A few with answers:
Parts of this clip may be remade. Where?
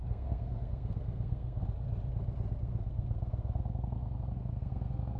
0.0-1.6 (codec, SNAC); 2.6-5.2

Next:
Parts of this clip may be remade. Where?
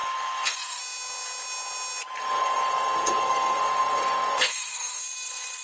0.0-0.8 (codec, SNAC); 2.2-5.0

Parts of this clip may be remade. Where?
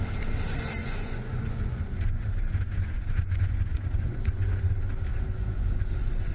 0.8-4.6 (vocoder, Vocos); 5.1-6.3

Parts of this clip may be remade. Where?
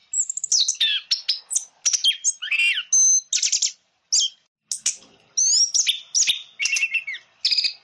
none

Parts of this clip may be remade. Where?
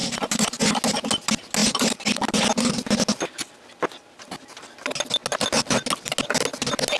0.0-0.6 (vocoder, BigVGAN v2); 1.6-2.4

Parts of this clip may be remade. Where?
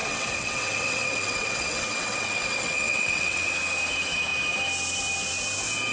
0.0-3.5 (vocoder, WaveNeXt)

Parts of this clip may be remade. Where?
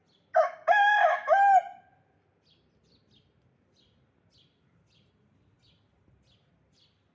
none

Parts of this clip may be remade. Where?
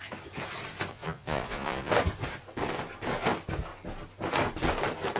0.9-1.9 (vocoder, Vocos)